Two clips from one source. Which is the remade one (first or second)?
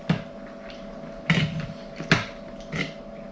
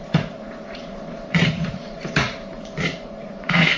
second